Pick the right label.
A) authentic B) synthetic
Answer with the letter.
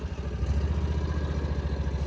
A